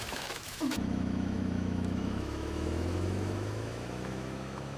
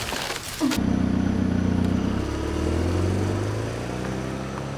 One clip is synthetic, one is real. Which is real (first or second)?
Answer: second